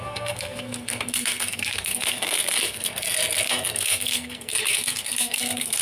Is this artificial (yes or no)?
yes